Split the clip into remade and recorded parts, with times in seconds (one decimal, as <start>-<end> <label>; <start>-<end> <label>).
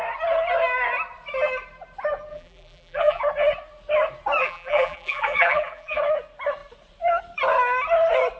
0.0-2.3 recorded; 2.3-3.2 remade; 3.2-4.4 recorded; 4.4-6.0 remade; 6.0-8.4 recorded